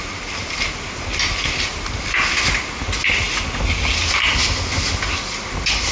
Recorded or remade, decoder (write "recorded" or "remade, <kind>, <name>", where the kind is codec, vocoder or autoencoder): recorded